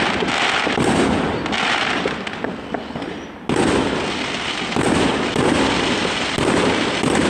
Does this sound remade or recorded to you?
recorded